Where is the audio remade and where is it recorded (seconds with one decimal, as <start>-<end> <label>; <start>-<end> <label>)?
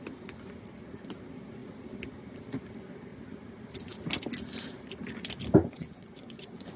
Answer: 0.0-5.6 recorded; 5.6-6.8 remade